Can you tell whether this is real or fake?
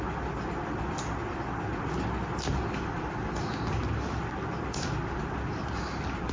real